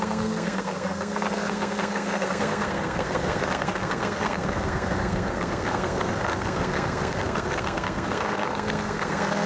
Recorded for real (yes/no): no